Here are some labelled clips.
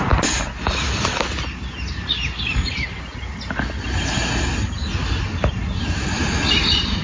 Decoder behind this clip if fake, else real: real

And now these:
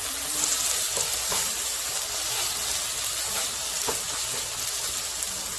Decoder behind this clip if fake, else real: real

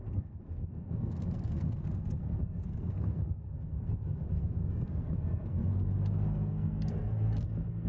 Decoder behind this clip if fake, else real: fake, codec, SNAC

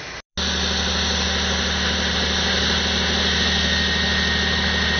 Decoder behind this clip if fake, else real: real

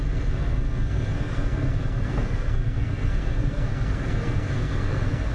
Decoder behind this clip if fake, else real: fake, codec, SNAC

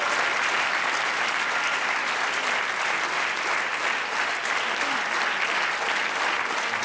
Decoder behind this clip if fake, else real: real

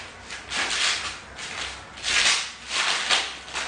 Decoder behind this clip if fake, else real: real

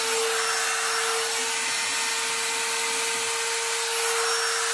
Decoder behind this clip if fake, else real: real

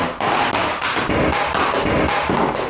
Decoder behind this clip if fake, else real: real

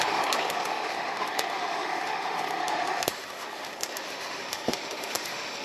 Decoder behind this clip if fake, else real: fake, autoencoder, DAC-VAE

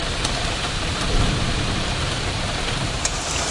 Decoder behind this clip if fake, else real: fake, vocoder, BigVGAN v2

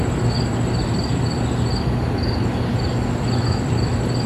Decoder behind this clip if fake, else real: real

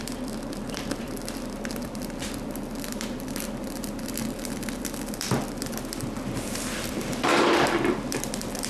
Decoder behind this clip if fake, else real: fake, vocoder, BigVGAN v2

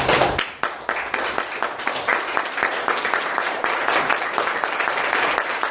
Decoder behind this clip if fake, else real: real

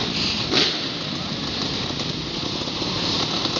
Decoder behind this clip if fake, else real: real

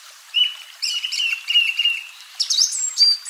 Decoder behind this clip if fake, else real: fake, vocoder, BigVGAN v2